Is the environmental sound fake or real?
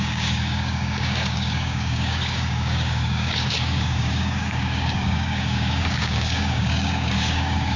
fake